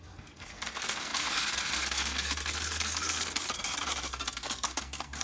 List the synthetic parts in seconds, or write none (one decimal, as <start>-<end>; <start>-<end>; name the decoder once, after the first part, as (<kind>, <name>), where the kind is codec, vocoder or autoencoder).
0.0-5.2 (codec, SNAC)